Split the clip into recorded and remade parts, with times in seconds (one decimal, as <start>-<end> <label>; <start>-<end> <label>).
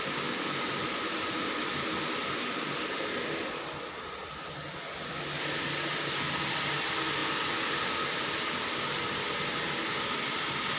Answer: 0.0-10.8 recorded